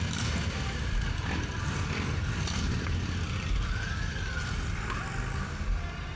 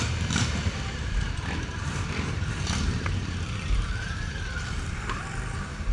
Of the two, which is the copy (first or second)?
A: second